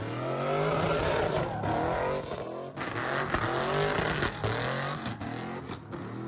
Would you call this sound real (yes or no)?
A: yes